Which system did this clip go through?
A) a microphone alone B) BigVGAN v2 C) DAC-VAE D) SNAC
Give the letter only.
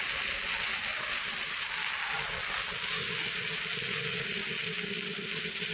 A